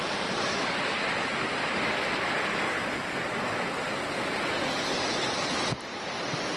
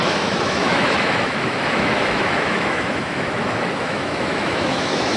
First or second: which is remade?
second